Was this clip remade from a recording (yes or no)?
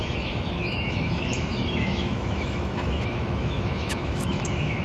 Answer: yes